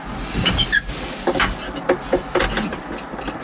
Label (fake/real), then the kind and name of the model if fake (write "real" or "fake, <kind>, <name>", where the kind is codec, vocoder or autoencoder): real